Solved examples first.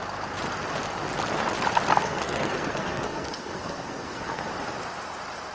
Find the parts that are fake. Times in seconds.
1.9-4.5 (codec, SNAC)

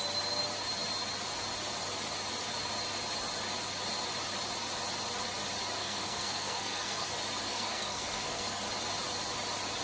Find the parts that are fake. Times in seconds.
5.8-7.1 (codec, SNAC); 7.5-8.6

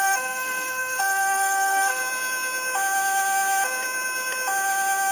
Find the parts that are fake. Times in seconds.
0.0-2.0 (codec, SNAC)